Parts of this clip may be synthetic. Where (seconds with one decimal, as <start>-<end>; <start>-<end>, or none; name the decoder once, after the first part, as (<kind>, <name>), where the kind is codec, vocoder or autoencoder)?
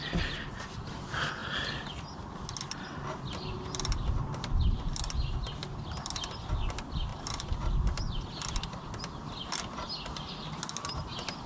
none